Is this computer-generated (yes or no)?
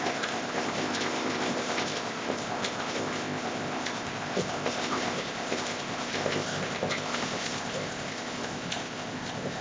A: yes